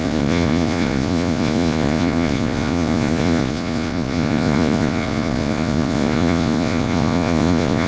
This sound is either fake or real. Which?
fake